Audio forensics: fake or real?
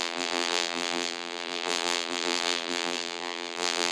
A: fake